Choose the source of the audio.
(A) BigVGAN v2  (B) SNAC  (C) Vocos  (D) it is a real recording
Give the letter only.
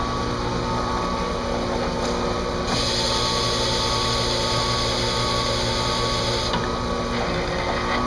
D